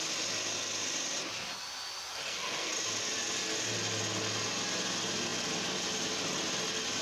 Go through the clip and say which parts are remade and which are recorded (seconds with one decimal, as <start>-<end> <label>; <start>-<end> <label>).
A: 0.0-2.1 recorded; 2.1-2.7 remade; 2.7-7.0 recorded